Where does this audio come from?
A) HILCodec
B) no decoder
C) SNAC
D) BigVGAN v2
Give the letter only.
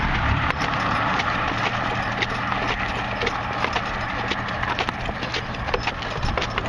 B